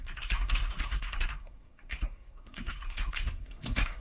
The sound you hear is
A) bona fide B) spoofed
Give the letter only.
B